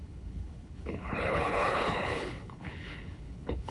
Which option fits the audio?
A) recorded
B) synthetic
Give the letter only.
B